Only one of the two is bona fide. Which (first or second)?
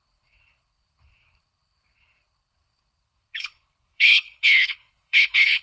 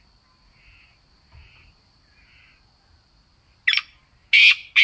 second